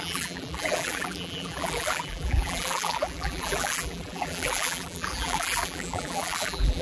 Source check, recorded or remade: remade